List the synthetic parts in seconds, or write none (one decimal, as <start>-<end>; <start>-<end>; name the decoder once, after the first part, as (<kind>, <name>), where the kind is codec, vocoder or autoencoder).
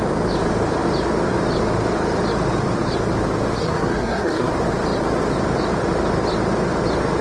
3.6-4.5 (codec, SNAC)